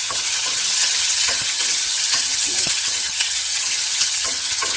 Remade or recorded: remade